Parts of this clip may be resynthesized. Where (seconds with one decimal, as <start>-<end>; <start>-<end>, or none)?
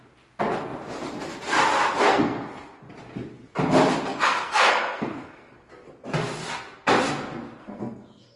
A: 2.1-2.8; 4.1-5.7; 7.6-8.4